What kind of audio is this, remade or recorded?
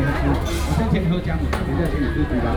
recorded